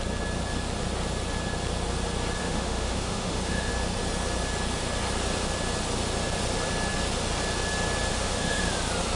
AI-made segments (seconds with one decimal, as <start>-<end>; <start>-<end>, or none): 2.4-3.7; 8.1-8.6